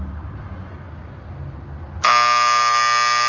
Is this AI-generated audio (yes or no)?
no